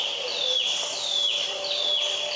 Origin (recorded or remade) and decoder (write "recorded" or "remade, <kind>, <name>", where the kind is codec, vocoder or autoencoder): recorded